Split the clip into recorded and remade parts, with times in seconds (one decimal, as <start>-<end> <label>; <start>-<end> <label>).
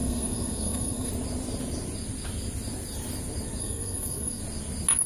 0.0-1.1 remade; 1.1-3.6 recorded; 3.6-4.4 remade; 4.4-5.1 recorded